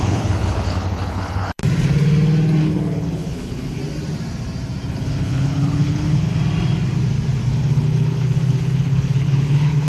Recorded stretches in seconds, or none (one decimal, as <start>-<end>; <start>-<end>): 1.6-2.6; 3.8-4.9; 6.3-7.5